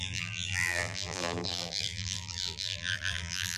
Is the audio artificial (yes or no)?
yes